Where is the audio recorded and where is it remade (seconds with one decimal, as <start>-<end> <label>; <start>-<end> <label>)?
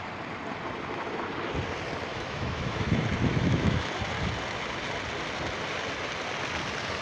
0.0-2.1 recorded; 2.1-2.9 remade; 2.9-3.3 recorded; 3.3-3.9 remade; 3.9-7.0 recorded